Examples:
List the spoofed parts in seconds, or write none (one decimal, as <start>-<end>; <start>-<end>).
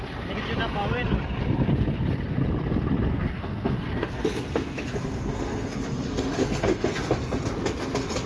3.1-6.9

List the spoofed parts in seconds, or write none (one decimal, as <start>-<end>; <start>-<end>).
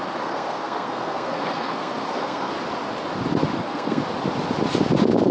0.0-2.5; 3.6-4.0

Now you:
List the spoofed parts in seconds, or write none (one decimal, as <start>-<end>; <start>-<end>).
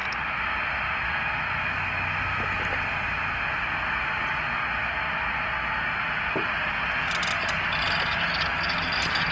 none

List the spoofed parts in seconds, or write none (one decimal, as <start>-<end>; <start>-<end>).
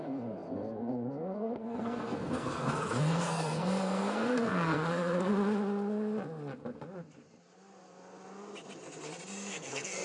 0.0-5.3; 9.5-10.0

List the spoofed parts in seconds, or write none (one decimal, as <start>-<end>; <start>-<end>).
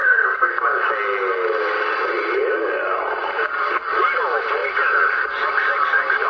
0.0-0.5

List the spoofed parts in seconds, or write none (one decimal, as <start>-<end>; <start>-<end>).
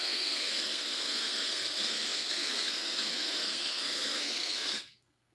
0.0-5.3